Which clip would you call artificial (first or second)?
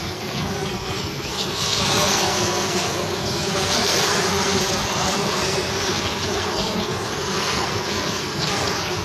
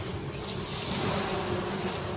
first